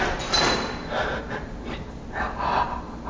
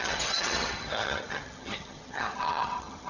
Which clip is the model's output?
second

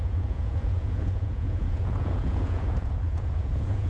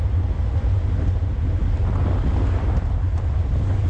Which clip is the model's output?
first